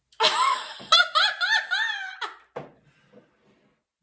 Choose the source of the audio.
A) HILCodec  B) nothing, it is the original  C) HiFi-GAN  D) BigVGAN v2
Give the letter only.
B